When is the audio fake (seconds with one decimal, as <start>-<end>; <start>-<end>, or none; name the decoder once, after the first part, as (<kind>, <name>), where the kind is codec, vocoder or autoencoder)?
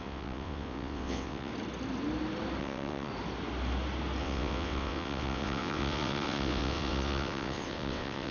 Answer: 0.0-1.5 (vocoder, WaveNeXt); 2.6-3.1; 4.2-8.3